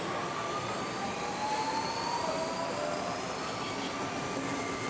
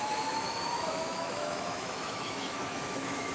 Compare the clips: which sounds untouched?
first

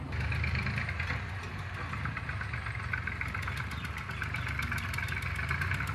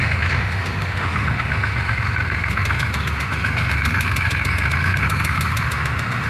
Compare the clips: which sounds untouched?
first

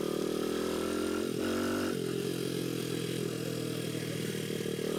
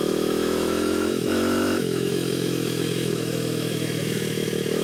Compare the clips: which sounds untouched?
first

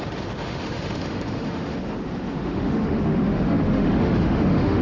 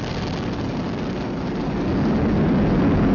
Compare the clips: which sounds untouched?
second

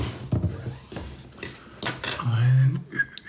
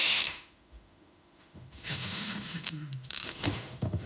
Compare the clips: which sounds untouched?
first